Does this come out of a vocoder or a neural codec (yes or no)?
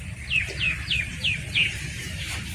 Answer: yes